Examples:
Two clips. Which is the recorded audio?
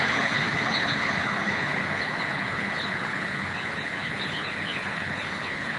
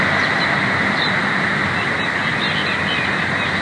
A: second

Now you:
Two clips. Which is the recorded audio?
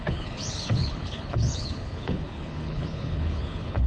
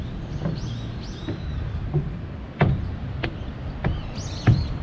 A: second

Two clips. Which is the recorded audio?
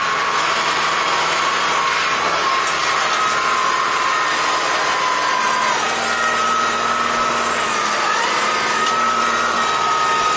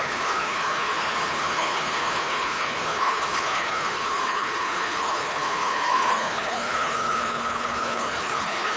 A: first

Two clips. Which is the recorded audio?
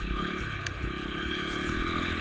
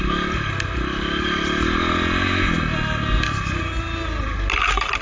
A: second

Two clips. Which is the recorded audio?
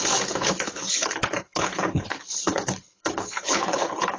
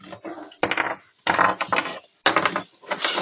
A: second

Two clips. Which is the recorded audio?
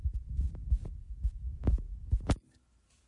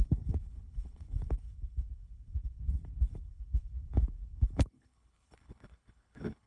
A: first